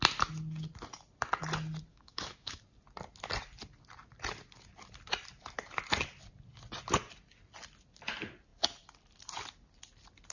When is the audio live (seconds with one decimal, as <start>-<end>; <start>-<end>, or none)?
0.0-1.9; 2.6-10.3